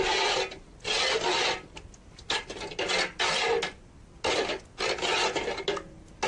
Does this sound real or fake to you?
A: real